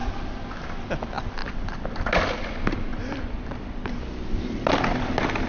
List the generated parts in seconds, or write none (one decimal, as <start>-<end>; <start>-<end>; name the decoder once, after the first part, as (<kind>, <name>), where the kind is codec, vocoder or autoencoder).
0.0-0.6 (vocoder, BigVGAN v2); 1.4-2.4; 2.9-5.1